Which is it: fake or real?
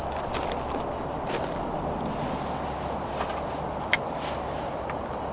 real